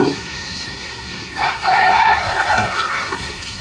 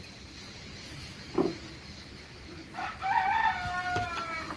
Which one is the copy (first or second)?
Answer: first